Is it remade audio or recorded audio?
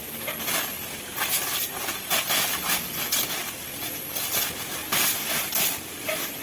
recorded